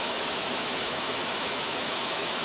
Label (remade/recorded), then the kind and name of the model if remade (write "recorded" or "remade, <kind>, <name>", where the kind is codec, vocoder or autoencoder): remade, autoencoder, DAC-VAE